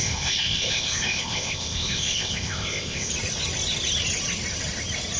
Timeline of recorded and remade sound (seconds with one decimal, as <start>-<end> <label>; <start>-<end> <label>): 0.0-3.1 remade; 3.1-5.2 recorded